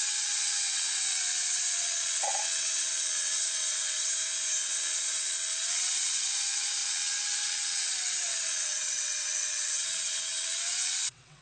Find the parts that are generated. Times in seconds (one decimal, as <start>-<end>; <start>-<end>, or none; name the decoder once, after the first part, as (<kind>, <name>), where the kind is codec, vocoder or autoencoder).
0.0-4.1 (vocoder, WaveNeXt); 4.6-11.4